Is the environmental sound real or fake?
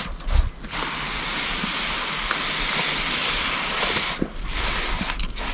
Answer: real